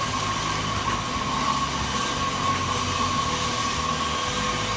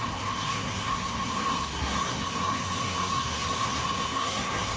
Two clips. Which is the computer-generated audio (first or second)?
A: second